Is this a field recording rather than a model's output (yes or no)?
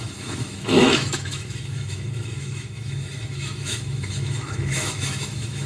no